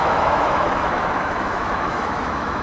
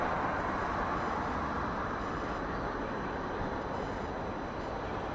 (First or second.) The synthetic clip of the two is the first